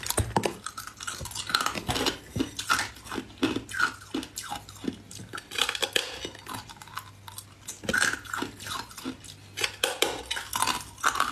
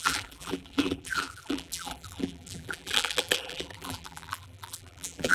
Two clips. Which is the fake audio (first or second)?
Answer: second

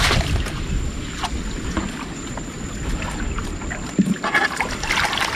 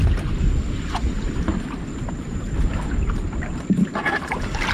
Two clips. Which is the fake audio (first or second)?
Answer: second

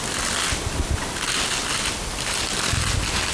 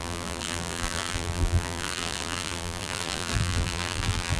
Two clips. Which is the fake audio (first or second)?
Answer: second